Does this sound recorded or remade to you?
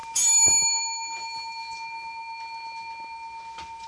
recorded